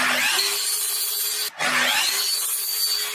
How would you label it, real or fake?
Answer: real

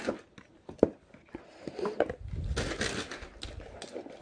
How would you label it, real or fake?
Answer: real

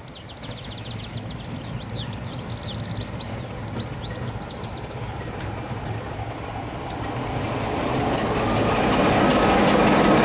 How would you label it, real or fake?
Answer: real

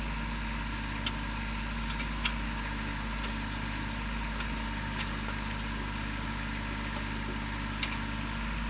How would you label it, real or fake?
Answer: real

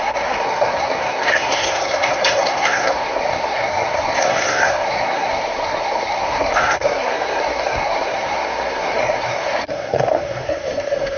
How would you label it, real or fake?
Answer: fake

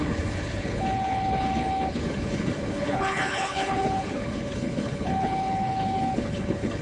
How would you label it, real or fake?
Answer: fake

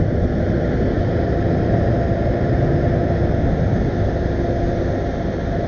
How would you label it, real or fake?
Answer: real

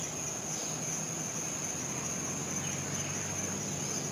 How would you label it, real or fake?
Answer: real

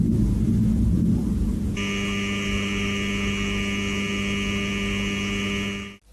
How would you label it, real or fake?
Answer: real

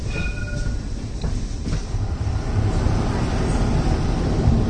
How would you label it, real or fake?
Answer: real